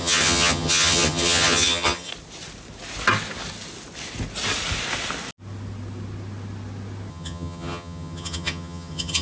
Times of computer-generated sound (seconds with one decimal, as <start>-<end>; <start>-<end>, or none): 0.0-2.1; 7.1-9.2